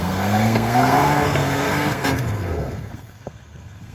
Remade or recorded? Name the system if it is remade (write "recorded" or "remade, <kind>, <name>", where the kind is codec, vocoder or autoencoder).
remade, codec, SNAC